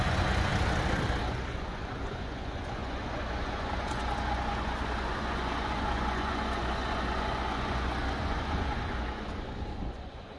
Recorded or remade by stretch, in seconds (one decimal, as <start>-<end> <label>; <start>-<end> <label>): 0.0-0.5 remade; 0.5-1.2 recorded; 1.2-10.4 remade